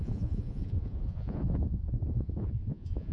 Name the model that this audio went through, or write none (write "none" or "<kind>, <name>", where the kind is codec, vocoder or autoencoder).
vocoder, Vocos